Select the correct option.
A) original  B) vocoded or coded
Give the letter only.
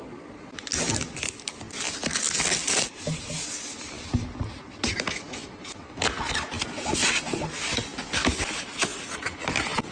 A